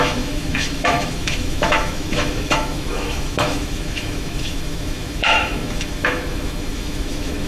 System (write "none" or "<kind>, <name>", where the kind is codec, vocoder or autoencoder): autoencoder, DAC-VAE